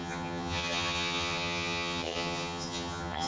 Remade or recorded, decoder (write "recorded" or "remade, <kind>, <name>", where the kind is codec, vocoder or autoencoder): remade, vocoder, HiFi-GAN